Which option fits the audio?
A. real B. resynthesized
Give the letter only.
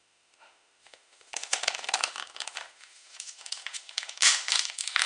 B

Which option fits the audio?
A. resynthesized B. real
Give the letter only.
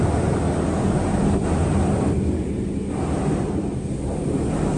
B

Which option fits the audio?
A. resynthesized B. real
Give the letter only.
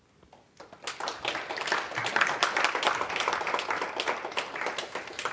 B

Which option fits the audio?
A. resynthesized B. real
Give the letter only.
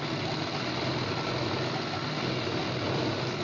B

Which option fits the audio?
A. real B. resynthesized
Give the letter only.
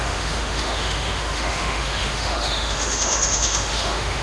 B